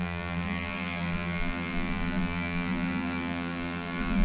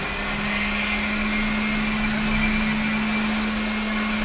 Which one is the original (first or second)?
second